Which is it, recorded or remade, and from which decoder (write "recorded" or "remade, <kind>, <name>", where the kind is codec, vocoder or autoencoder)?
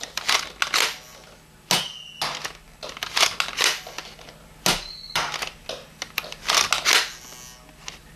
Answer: recorded